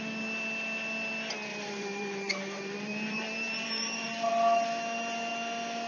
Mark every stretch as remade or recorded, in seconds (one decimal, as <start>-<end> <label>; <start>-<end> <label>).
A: 0.0-1.5 recorded; 1.5-4.3 remade; 4.3-5.9 recorded